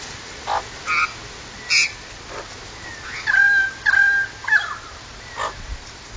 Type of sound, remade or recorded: recorded